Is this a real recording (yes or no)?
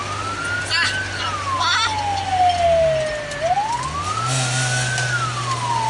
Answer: yes